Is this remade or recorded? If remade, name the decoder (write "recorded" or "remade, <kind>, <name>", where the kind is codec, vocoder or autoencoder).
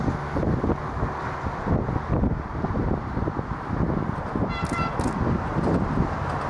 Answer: recorded